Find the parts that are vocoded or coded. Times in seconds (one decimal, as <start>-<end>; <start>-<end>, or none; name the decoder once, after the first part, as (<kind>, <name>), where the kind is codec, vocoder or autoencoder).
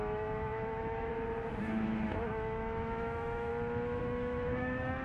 0.0-1.1 (autoencoder, DAC-VAE); 1.6-3.5; 4.0-5.0